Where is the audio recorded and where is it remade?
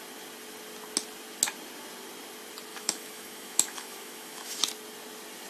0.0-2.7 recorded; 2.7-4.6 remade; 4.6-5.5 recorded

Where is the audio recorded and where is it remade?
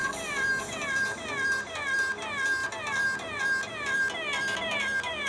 0.0-5.3 recorded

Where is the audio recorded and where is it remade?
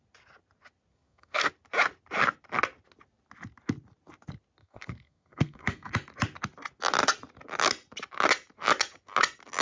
0.0-0.9 recorded; 0.9-1.5 remade; 1.5-4.6 recorded; 4.6-5.9 remade; 5.9-9.6 recorded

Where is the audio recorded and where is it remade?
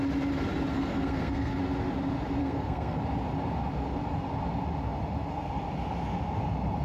0.0-0.7 recorded; 0.7-1.6 remade; 1.6-2.4 recorded; 2.4-3.0 remade; 3.0-6.8 recorded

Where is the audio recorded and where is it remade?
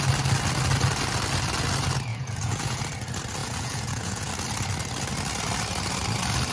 0.0-2.1 recorded; 2.1-2.8 remade; 2.8-3.4 recorded; 3.4-4.3 remade; 4.3-6.5 recorded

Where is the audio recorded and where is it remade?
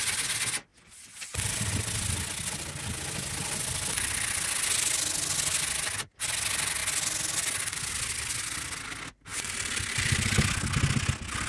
0.0-9.3 recorded; 9.3-10.4 remade; 10.4-11.5 recorded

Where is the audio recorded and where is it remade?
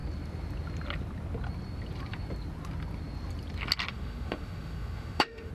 0.0-3.9 recorded; 3.9-5.5 remade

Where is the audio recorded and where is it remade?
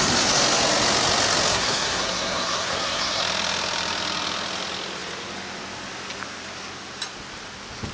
0.0-1.5 recorded; 1.5-3.2 remade; 3.2-7.9 recorded